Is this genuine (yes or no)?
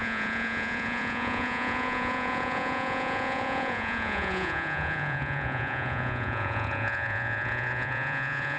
no